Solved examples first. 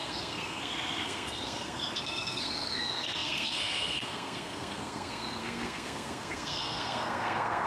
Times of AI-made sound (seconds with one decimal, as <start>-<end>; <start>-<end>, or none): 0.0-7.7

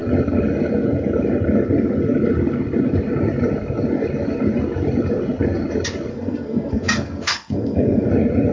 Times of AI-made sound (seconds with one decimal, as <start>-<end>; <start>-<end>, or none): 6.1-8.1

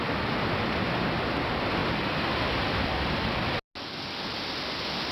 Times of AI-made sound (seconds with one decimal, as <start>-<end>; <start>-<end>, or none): none